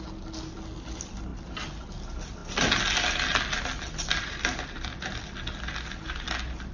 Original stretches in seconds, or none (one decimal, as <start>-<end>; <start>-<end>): 0.0-6.7